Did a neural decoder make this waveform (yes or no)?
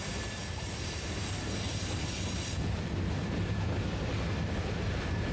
yes